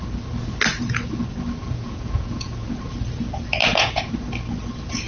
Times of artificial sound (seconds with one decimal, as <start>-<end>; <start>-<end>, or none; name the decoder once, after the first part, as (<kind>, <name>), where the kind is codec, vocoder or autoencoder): 1.6-2.8 (vocoder, Vocos); 3.6-4.3